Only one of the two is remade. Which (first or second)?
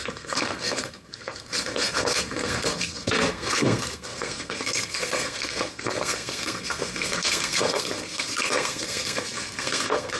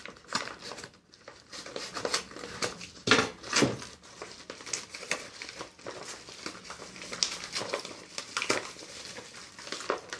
first